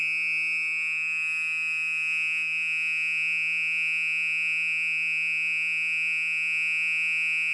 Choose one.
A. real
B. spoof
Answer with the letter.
A